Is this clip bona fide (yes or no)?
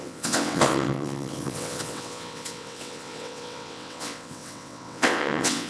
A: no